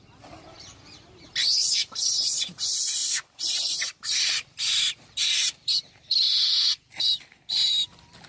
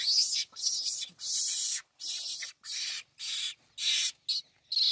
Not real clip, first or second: first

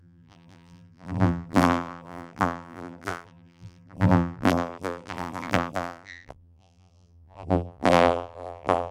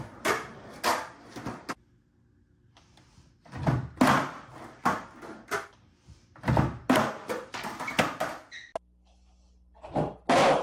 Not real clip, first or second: first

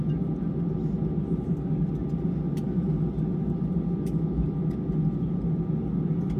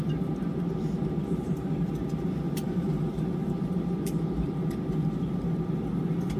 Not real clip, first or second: second